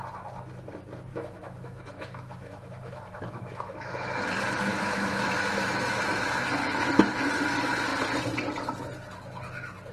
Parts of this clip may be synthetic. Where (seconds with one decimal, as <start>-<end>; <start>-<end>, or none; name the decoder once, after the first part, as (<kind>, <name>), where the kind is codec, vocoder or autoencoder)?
1.1-4.2 (autoencoder, DAC-VAE); 4.7-6.9

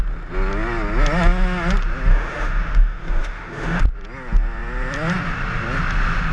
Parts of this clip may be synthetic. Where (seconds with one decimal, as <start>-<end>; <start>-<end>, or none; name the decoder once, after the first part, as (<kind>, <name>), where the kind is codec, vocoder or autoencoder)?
2.1-3.8 (autoencoder, DAC-VAE)

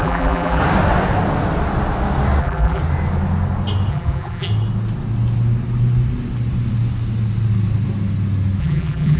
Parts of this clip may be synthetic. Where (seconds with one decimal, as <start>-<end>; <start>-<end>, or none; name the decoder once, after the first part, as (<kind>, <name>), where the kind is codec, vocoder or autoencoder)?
0.0-0.6 (vocoder, BigVGAN v2); 2.4-2.8; 3.9-4.5; 8.6-9.2

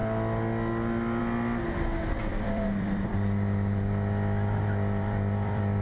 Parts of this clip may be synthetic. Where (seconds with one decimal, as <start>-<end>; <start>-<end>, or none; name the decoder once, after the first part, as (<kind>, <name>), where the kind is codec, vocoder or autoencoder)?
2.3-5.8 (vocoder, BigVGAN v2)

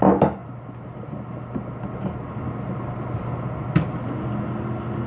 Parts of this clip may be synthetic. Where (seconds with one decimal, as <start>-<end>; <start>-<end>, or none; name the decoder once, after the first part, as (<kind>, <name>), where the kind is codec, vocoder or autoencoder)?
none